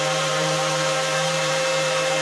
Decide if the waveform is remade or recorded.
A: remade